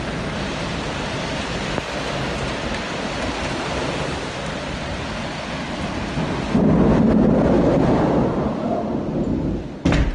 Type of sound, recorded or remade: recorded